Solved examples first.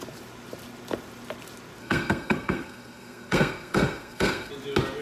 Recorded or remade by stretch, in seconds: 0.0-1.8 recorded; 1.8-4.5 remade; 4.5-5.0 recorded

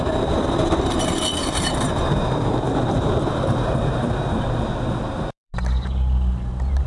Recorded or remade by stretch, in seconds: 0.0-1.4 recorded; 1.4-5.5 remade; 5.5-6.9 recorded

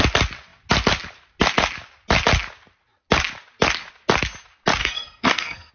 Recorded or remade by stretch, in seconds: 0.0-4.8 recorded; 4.8-5.7 remade

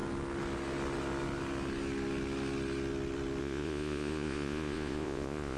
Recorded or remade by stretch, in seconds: 0.0-3.4 recorded; 3.4-5.6 remade

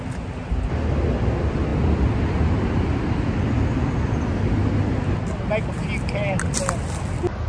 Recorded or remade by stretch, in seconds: 0.0-7.5 recorded

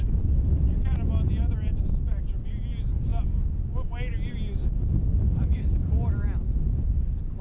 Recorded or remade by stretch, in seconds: 0.0-7.4 recorded

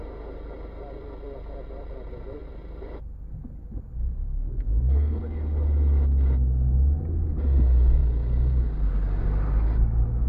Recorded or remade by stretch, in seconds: 0.0-4.3 recorded; 4.3-5.2 remade; 5.2-10.3 recorded